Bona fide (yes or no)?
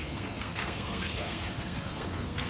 no